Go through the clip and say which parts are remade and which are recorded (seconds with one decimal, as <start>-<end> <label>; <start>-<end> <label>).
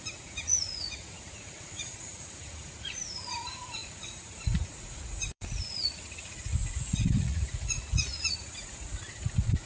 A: 0.0-9.7 remade